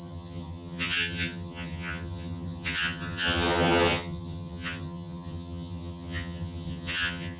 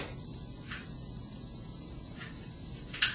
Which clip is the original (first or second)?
second